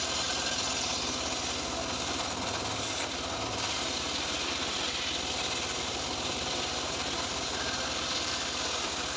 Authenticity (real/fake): real